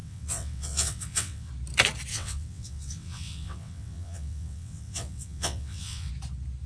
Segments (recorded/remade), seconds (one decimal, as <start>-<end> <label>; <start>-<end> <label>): 0.0-1.5 remade; 1.5-2.1 recorded; 2.1-6.1 remade; 6.1-6.7 recorded